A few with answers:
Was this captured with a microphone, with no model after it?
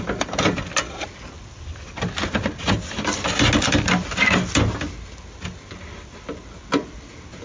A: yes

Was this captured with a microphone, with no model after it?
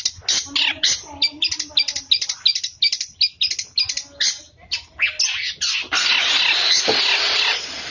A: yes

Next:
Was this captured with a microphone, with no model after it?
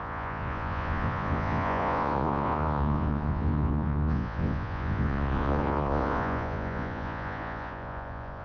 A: no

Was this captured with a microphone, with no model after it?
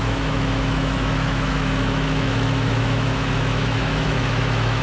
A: no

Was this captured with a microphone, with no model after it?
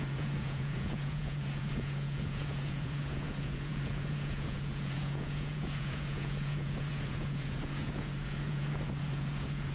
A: no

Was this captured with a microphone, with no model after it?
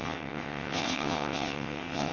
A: no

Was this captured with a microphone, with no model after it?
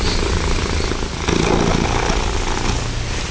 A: yes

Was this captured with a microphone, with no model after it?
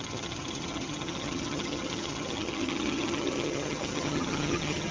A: no